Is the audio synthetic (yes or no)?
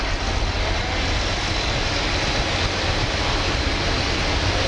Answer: no